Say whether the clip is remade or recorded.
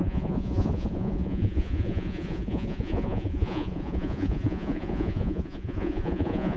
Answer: remade